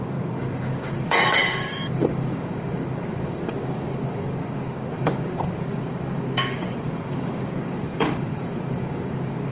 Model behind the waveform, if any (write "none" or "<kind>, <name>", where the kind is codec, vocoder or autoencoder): codec, DAC